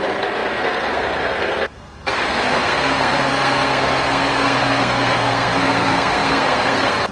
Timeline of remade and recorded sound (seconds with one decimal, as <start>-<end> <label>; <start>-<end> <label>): 0.0-7.1 remade

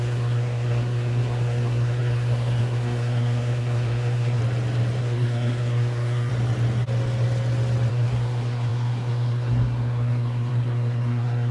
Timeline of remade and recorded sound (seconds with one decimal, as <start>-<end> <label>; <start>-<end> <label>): 0.0-4.4 remade; 4.4-5.0 recorded; 5.0-6.3 remade; 6.3-7.9 recorded; 7.9-11.5 remade

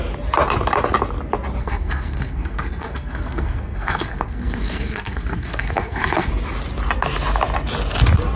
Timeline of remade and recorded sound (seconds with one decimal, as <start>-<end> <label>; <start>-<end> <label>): 0.0-1.6 recorded; 1.6-6.3 remade; 6.3-8.4 recorded

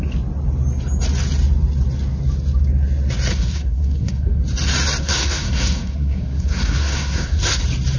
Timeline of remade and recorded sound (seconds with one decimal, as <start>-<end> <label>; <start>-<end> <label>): 0.0-3.3 recorded; 3.3-4.4 remade; 4.4-5.0 recorded; 5.0-7.6 remade; 7.6-8.0 recorded